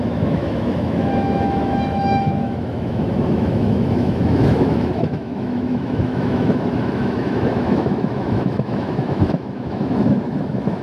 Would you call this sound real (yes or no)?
no